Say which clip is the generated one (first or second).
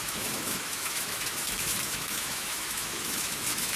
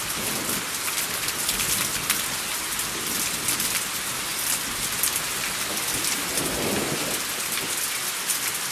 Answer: first